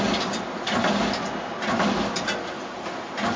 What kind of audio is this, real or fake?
real